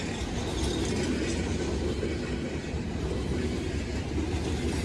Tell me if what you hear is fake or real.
real